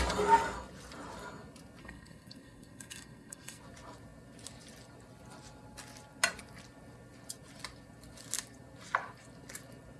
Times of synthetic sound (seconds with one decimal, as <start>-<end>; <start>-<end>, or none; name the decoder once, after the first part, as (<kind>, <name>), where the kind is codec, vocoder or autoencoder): 1.8-3.6 (codec, SNAC)